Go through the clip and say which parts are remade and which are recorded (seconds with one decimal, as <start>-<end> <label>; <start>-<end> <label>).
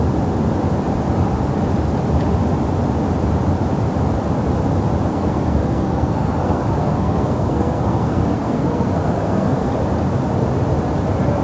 0.0-5.1 recorded; 5.1-9.7 remade; 9.7-11.4 recorded